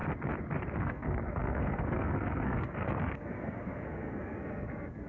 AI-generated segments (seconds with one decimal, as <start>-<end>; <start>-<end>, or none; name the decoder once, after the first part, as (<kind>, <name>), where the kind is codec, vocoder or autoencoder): 0.8-5.1 (codec, SNAC)